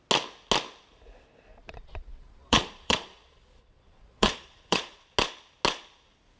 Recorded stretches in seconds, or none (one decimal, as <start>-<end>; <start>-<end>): 0.0-1.5; 5.0-6.4